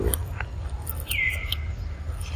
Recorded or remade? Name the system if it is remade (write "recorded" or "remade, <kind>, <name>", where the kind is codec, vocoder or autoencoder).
recorded